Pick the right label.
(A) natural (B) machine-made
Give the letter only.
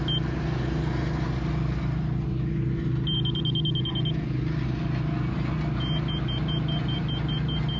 A